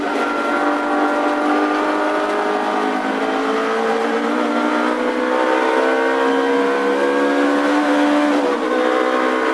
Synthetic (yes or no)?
no